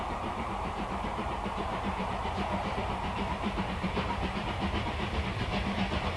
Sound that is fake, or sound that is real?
fake